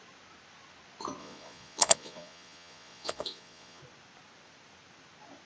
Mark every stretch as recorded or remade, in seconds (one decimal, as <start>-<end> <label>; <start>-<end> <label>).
0.0-1.2 recorded; 1.2-3.8 remade; 3.8-5.5 recorded